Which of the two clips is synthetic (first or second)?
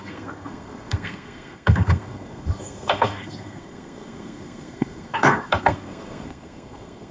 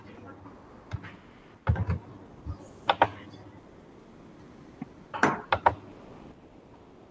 first